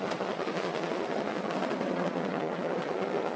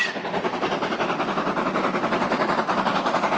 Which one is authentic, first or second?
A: second